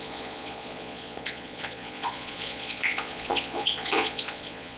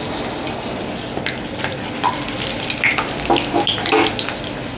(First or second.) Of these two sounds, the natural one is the second